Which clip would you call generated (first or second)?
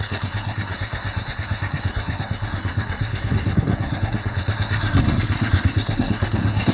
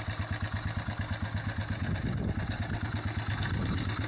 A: first